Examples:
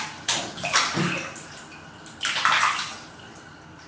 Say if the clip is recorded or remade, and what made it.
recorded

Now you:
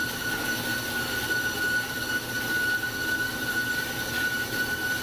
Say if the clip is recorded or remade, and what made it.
recorded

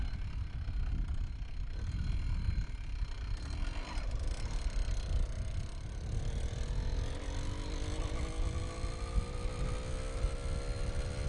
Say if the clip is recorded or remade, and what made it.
recorded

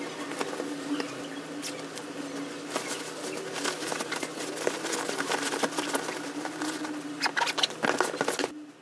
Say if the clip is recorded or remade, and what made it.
recorded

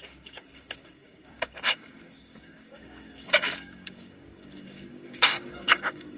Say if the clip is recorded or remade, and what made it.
remade, codec, DAC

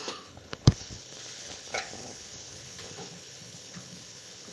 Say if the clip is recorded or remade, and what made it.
remade, codec, HILCodec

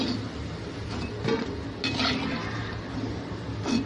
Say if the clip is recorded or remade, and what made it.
recorded